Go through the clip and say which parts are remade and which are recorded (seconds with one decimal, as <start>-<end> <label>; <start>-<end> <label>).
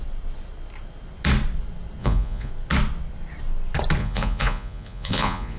0.0-2.0 recorded; 2.0-2.5 remade; 2.5-4.0 recorded; 4.0-5.6 remade